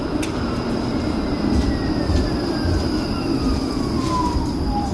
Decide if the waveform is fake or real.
real